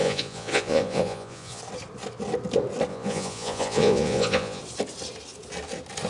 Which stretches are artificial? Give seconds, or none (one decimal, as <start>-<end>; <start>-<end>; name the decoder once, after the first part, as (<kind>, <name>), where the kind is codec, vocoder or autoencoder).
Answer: 0.0-1.6 (vocoder, Vocos); 2.9-4.6

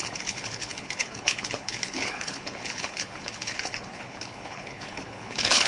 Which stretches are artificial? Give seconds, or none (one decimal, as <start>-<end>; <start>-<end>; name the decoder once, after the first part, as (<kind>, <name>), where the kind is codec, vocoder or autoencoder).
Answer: 0.0-5.7 (codec, HILCodec)

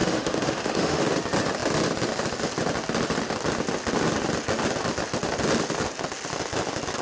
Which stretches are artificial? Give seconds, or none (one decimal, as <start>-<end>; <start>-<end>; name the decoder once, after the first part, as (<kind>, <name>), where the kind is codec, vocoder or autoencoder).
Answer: 0.0-1.0 (autoencoder, DAC-VAE)

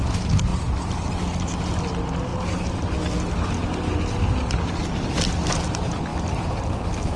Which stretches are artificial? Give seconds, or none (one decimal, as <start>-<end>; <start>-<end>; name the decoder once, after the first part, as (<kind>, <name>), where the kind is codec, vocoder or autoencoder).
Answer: none